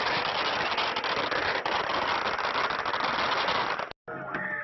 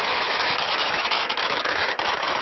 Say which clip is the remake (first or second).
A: second